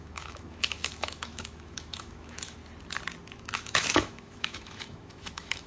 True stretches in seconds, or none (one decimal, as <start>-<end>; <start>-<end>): 2.6-3.2